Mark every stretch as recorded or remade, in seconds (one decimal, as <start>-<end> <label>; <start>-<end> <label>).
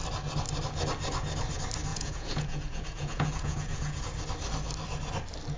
0.0-1.9 recorded; 1.9-4.0 remade; 4.0-5.6 recorded